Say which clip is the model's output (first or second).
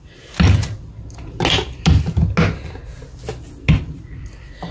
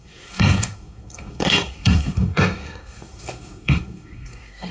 second